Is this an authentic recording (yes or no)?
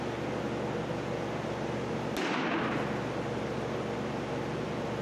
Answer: yes